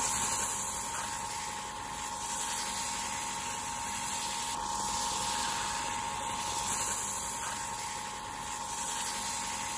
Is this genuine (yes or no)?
yes